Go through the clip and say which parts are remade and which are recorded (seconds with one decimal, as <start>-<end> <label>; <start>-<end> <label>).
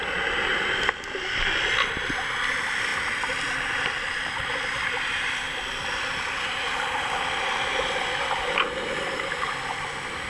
0.0-2.9 recorded; 2.9-4.9 remade; 4.9-10.3 recorded